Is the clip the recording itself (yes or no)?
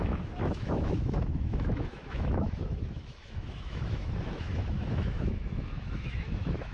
no